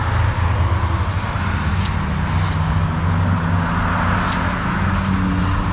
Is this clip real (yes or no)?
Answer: yes